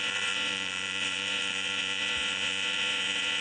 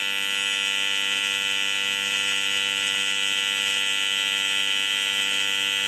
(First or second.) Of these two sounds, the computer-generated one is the first